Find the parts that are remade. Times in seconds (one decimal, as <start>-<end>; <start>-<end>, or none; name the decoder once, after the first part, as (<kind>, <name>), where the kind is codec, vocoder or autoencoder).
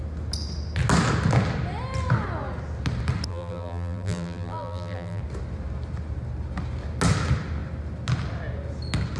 3.3-5.2 (vocoder, BigVGAN v2)